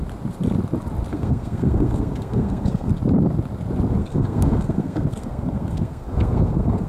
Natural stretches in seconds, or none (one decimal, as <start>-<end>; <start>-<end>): 0.0-1.1; 2.9-4.0